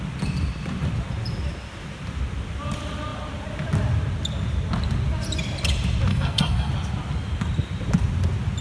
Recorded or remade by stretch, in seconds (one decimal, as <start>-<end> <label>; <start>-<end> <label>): 0.0-6.1 recorded; 6.1-6.7 remade; 6.7-8.6 recorded